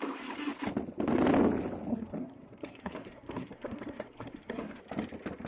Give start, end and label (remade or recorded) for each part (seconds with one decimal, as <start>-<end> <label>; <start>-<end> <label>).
0.0-1.9 recorded; 1.9-4.8 remade; 4.8-5.5 recorded